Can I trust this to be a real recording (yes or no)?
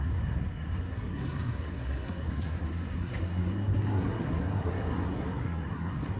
no